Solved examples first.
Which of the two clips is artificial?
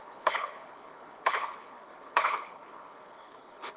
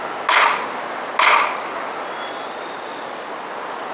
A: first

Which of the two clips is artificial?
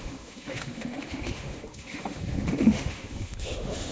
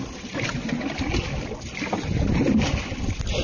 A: first